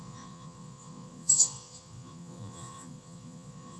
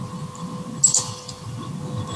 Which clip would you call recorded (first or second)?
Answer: second